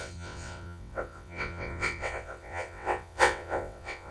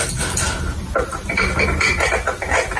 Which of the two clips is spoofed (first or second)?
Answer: first